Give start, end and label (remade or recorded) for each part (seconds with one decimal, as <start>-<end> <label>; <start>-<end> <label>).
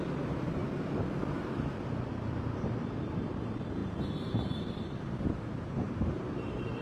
0.0-0.6 remade; 0.6-2.1 recorded; 2.1-6.8 remade